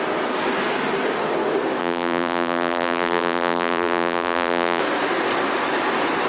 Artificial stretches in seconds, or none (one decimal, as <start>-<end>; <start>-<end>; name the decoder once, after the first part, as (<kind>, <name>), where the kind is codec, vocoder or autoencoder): 1.8-4.8 (vocoder, BigVGAN v2)